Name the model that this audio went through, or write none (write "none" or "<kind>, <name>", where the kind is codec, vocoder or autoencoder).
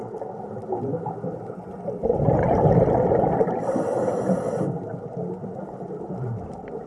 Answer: none